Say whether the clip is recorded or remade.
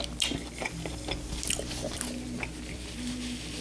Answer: recorded